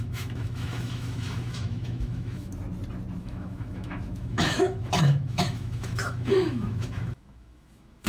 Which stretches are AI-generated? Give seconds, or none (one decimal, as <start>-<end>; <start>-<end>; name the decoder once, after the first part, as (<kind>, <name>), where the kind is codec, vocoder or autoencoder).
0.0-2.5 (autoencoder, DAC-VAE); 3.2-8.1